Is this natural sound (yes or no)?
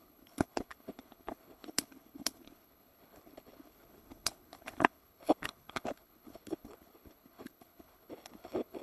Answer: no